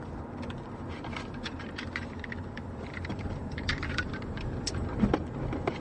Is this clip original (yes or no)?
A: no